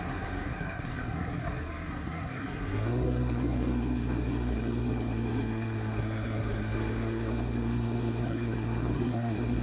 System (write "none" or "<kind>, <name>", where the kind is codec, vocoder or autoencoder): codec, SNAC